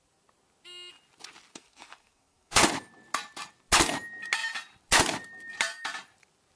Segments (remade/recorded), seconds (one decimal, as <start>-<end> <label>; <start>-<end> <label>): 0.0-1.5 recorded; 1.5-2.7 remade; 2.7-6.6 recorded